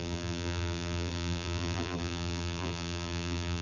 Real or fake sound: fake